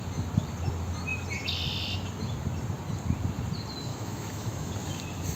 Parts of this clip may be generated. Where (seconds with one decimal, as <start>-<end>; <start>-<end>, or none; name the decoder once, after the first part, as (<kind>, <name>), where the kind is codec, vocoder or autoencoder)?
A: 3.9-4.7 (autoencoder, DAC-VAE)